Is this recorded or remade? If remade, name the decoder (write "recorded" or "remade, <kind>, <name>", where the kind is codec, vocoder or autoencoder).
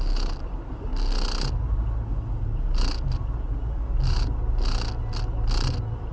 recorded